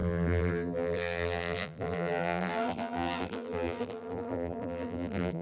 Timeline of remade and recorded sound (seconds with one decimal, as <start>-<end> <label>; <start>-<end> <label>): 0.0-5.4 remade